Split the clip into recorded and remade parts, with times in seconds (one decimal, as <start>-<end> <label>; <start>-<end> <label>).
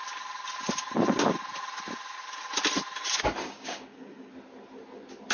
0.0-3.4 recorded; 3.4-4.3 remade; 4.3-5.3 recorded